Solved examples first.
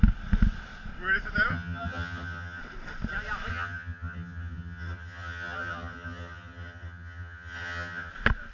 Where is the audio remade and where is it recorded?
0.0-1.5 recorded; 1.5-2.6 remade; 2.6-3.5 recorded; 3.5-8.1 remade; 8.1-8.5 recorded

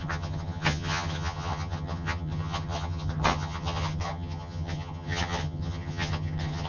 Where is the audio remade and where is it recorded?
0.0-6.7 remade

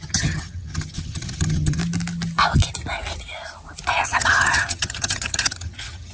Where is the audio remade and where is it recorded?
0.0-1.8 remade; 1.8-3.9 recorded; 3.9-6.1 remade

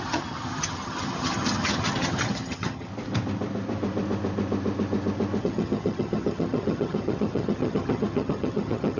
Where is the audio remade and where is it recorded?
0.0-2.9 remade; 2.9-5.4 recorded; 5.4-9.0 remade

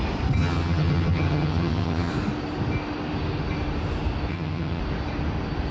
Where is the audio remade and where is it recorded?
0.0-0.4 recorded; 0.4-2.1 remade; 2.1-4.3 recorded; 4.3-4.8 remade; 4.8-5.7 recorded

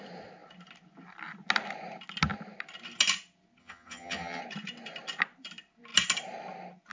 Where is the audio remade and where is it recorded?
0.0-3.6 recorded; 3.6-4.4 remade; 4.4-6.9 recorded

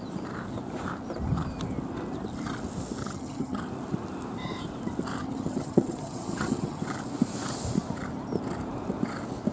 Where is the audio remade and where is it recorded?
0.0-3.0 recorded; 3.0-3.6 remade; 3.6-5.2 recorded; 5.2-6.8 remade; 6.8-9.5 recorded